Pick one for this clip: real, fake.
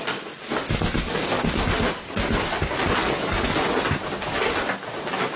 real